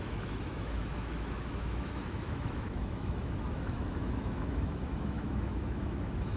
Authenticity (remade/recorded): remade